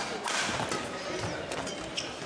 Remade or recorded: recorded